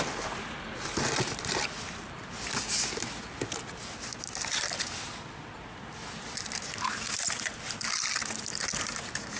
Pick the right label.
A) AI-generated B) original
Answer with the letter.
B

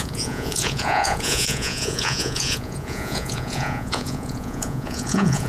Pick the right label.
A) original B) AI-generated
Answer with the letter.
B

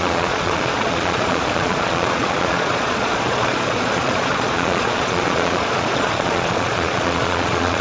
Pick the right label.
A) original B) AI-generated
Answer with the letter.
B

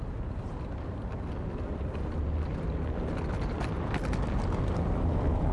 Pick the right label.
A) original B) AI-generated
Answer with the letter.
A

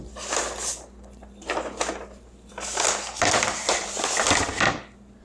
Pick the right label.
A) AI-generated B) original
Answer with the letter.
B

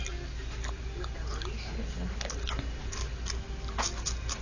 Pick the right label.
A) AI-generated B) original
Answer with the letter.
B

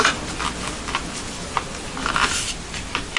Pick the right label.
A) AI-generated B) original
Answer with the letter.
B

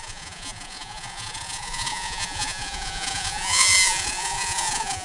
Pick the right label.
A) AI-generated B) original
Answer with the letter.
A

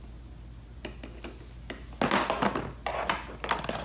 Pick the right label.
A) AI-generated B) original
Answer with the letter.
B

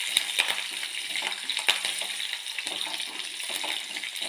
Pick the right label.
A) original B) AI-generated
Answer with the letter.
A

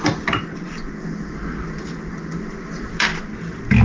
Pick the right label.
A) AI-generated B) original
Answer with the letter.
B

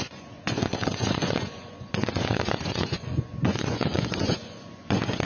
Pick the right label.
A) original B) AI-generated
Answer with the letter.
B